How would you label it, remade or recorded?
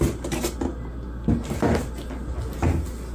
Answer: recorded